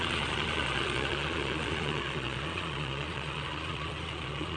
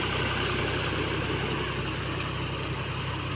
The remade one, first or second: first